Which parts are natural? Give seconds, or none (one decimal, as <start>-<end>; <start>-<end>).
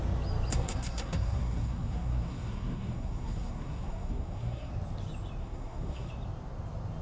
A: 0.0-0.5; 4.7-5.4; 6.1-7.0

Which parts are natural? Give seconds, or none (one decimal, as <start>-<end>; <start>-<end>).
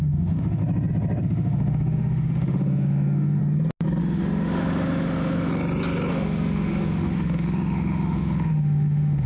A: 0.6-1.2; 3.4-4.0; 5.5-6.1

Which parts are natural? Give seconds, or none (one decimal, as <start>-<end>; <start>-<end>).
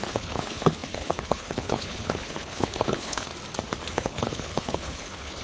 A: 3.3-3.9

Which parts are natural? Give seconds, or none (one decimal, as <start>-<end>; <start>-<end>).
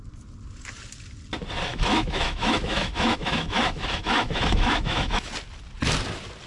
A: 0.0-1.7; 5.3-6.5